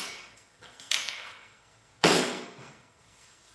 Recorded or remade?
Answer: remade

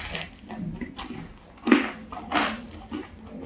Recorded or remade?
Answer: recorded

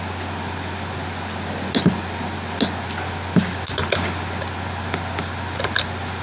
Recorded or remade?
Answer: recorded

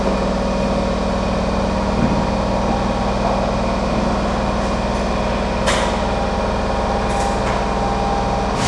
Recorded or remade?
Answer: recorded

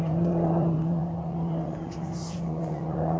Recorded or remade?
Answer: remade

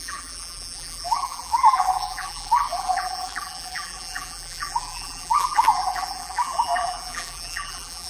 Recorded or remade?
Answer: remade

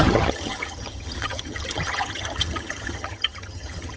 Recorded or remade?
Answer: remade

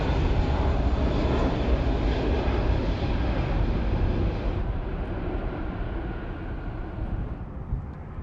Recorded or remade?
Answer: recorded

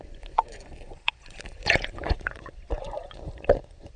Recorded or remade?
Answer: remade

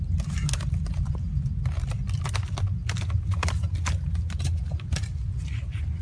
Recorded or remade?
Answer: recorded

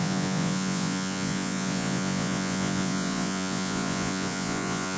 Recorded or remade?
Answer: remade